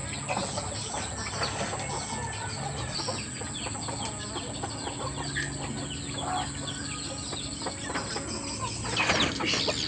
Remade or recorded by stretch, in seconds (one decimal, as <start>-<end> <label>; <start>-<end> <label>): 0.0-9.9 recorded